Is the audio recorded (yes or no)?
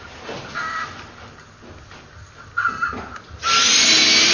yes